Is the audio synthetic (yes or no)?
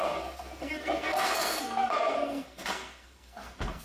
yes